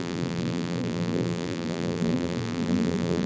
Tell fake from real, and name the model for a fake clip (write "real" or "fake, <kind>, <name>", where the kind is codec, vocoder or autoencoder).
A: fake, vocoder, BigVGAN v2